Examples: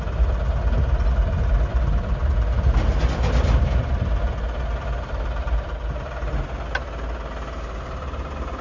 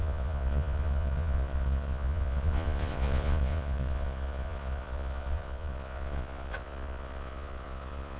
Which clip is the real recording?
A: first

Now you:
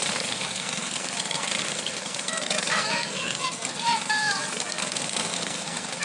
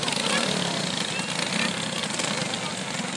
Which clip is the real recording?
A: second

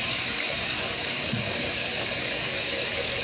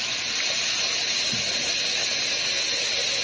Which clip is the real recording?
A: second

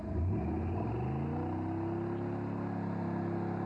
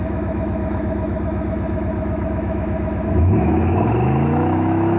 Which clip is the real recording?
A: first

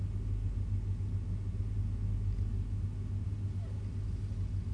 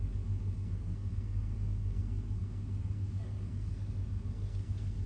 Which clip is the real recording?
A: first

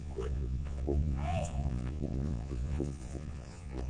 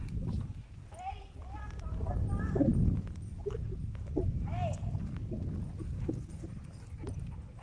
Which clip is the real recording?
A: second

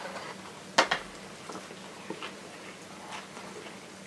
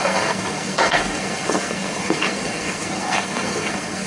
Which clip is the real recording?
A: first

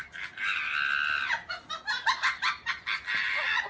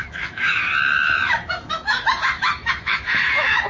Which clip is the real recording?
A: first